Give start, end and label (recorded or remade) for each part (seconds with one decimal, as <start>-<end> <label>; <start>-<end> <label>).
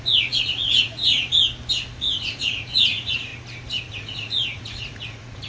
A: 0.0-1.3 remade; 1.3-2.1 recorded; 2.1-3.3 remade; 3.3-3.9 recorded; 3.9-5.5 remade